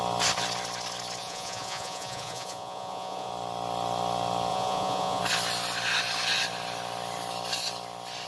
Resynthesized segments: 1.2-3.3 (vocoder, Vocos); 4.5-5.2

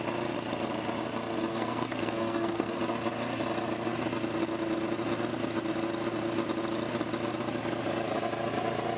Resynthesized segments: 1.5-2.8 (codec, SNAC)